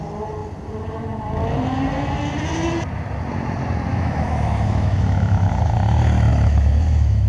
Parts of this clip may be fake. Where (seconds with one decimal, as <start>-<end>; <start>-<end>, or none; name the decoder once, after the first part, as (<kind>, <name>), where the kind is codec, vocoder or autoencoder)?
3.9-5.5 (autoencoder, DAC-VAE); 6.3-7.3